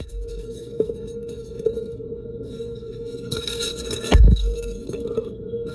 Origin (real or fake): fake